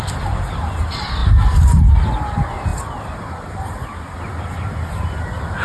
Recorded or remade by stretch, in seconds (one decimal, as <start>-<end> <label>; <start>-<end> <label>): 0.0-5.6 recorded